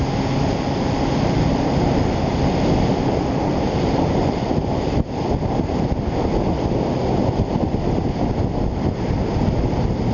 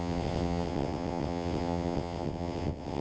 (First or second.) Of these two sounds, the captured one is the first